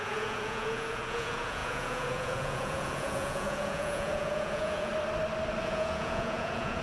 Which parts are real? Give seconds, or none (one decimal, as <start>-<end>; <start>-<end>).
4.9-5.6